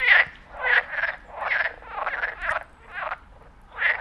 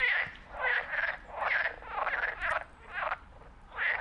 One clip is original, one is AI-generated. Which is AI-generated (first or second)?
second